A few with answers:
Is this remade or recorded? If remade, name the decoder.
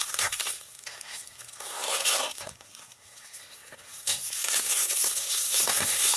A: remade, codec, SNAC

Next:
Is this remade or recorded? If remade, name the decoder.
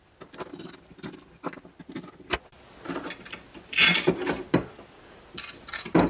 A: recorded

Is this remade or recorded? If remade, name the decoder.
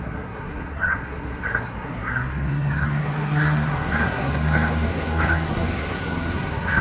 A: remade, codec, SNAC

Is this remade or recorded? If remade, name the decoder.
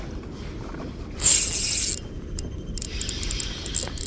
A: recorded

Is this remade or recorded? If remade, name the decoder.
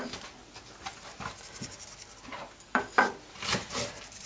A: recorded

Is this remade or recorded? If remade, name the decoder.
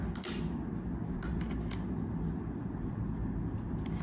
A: recorded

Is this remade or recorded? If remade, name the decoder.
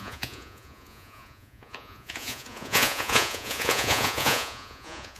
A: remade, vocoder, Vocos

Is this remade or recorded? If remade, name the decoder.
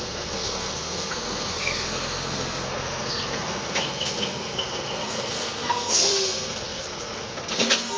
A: remade, codec, SNAC